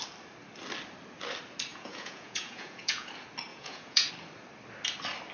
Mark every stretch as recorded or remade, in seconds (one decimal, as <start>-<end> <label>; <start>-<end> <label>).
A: 0.0-1.7 recorded; 1.7-3.1 remade; 3.1-3.5 recorded; 3.5-4.1 remade; 4.1-5.3 recorded